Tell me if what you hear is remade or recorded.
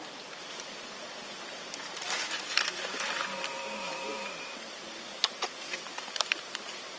remade